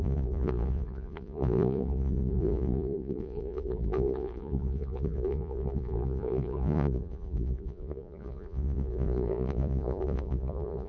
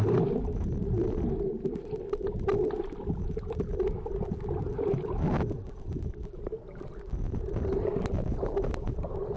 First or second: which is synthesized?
first